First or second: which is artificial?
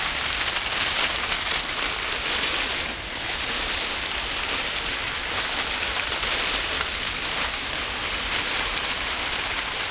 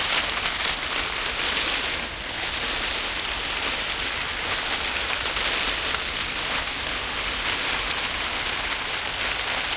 first